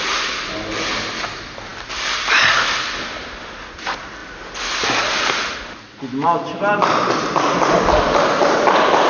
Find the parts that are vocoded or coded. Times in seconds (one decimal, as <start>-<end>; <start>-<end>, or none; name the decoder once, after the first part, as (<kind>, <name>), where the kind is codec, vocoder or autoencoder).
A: none